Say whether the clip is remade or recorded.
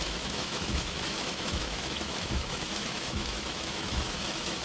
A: remade